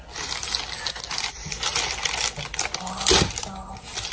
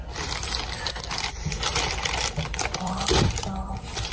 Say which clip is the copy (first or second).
second